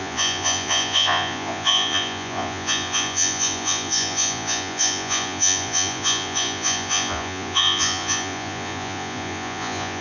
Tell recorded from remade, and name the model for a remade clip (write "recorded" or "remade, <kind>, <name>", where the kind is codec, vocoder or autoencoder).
remade, vocoder, Vocos